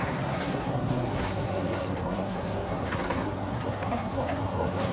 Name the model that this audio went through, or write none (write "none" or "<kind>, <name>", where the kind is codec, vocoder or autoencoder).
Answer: codec, SNAC